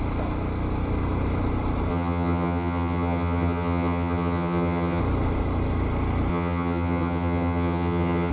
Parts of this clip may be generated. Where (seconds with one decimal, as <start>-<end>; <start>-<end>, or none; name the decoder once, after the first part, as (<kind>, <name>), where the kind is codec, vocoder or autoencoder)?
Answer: 1.9-5.0 (vocoder, HiFi-GAN); 6.3-8.3